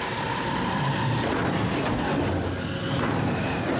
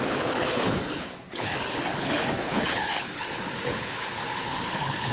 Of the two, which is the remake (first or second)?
second